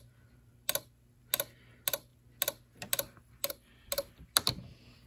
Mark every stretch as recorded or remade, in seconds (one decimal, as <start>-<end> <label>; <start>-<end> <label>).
0.0-5.1 recorded

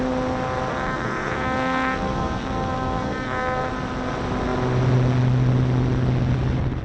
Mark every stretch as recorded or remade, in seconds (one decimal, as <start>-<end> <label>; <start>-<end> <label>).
0.0-0.7 recorded; 0.7-3.7 remade; 3.7-6.8 recorded

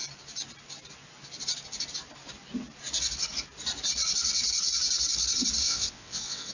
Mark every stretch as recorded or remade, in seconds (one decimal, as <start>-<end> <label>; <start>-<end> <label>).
0.0-5.6 recorded; 5.6-6.5 remade

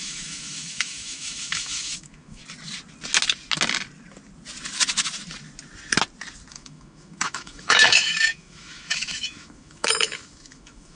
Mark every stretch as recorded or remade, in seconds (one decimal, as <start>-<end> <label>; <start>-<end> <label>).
0.0-2.4 remade; 2.4-6.5 recorded; 6.5-11.0 remade

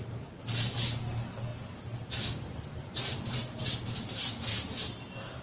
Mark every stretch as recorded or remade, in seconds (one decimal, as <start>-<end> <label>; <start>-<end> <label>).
0.0-5.4 recorded

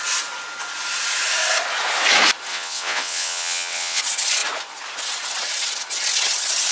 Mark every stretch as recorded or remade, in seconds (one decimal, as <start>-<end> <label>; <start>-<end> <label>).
0.0-2.5 recorded; 2.5-4.0 remade; 4.0-6.7 recorded

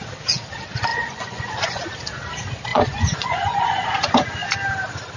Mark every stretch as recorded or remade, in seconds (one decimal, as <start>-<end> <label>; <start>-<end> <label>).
0.0-0.9 recorded; 0.9-1.8 remade; 1.8-2.7 recorded; 2.7-3.9 remade; 3.9-5.2 recorded

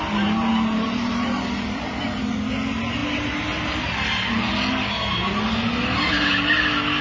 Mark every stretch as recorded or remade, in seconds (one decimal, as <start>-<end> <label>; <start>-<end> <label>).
0.0-0.5 recorded; 0.5-2.4 remade; 2.4-3.0 recorded; 3.0-3.8 remade; 3.8-7.0 recorded